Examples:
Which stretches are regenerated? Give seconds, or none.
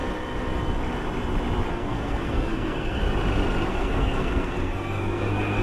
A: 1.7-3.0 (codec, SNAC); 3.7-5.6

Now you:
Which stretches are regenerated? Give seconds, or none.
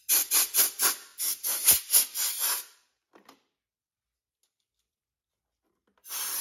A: none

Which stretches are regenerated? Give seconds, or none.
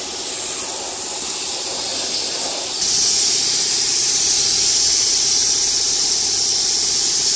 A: none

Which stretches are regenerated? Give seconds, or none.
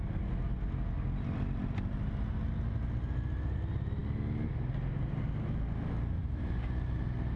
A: none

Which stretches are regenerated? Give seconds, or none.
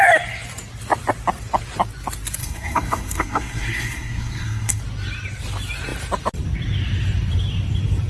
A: 2.4-4.8 (codec, SNAC)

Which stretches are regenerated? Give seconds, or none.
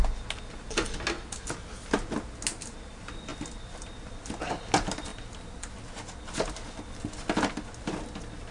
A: none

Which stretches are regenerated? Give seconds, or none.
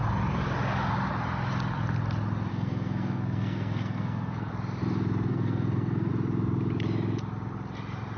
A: 2.5-4.5 (codec, SNAC); 5.3-6.1